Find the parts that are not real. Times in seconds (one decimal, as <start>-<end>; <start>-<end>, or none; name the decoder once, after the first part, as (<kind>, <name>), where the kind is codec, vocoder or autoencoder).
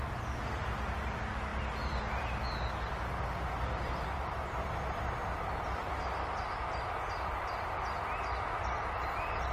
5.2-6.0 (vocoder, BigVGAN v2)